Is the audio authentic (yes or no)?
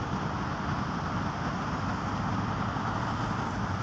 yes